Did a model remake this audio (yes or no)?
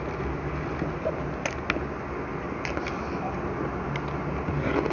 no